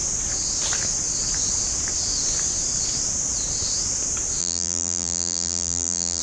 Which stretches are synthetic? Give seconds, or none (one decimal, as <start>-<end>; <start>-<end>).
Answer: 4.4-6.2